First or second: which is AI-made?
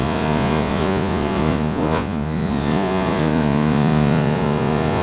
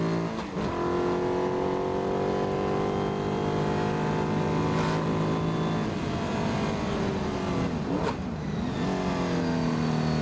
first